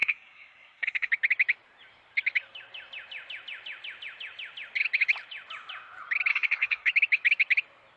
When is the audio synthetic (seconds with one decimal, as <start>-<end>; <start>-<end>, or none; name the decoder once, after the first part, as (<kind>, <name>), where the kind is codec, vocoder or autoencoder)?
0.0-1.1 (codec, SNAC); 6.3-6.9

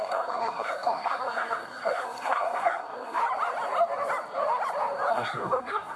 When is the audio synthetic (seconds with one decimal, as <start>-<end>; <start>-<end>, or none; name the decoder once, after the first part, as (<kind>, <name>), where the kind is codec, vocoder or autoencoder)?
0.0-3.2 (codec, SNAC); 5.1-6.0